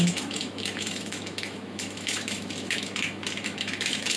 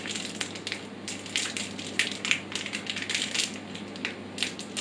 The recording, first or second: second